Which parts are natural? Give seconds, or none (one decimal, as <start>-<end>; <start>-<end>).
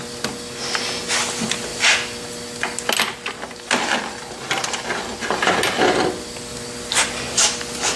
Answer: 0.0-8.0